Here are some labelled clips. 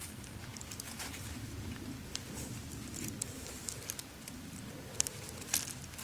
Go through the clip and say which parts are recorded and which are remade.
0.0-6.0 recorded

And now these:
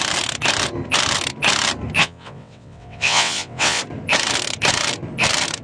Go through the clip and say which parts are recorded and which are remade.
0.0-2.0 recorded; 2.0-3.8 remade; 3.8-5.6 recorded

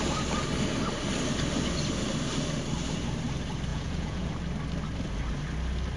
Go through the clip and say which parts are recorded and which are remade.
0.0-3.7 recorded; 3.7-4.3 remade; 4.3-6.0 recorded